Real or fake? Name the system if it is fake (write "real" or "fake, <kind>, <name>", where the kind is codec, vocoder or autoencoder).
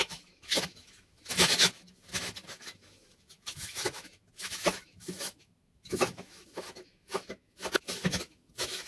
fake, autoencoder, DAC-VAE